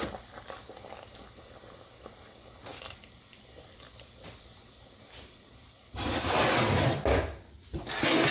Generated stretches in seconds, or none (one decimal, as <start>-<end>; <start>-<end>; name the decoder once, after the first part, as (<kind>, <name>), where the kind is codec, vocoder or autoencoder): 2.7-6.6 (vocoder, BigVGAN v2)